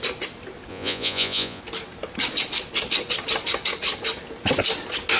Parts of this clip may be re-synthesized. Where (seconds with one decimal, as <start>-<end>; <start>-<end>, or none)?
0.7-1.6